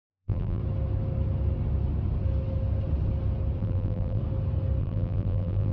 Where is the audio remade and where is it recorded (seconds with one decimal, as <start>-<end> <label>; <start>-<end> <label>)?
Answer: 0.0-0.6 remade; 0.6-3.6 recorded; 3.6-4.2 remade; 4.2-4.8 recorded; 4.8-5.7 remade